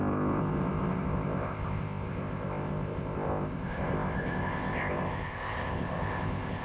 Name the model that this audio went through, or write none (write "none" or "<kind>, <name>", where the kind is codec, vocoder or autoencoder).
codec, ZipCodec